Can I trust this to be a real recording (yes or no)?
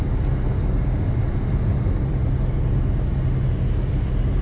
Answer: yes